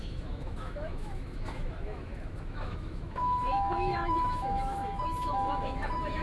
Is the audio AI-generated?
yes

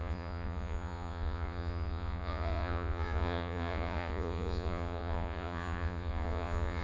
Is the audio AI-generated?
yes